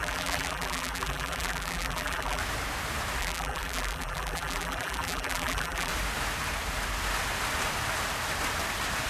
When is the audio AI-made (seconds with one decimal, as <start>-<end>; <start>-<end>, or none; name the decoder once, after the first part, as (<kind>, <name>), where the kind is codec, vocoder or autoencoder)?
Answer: 0.0-2.4 (vocoder, BigVGAN v2); 3.2-5.9